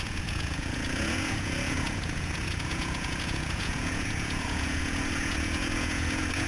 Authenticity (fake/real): fake